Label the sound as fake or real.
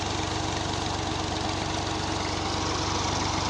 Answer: real